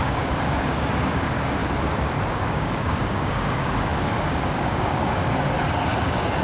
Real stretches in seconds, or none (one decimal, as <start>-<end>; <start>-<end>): 1.6-2.3; 5.2-6.0